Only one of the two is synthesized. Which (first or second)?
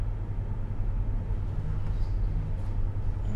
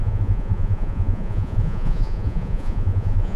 second